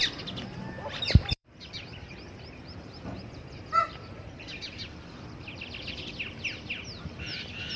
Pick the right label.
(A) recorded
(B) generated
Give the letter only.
B